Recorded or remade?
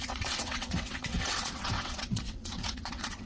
remade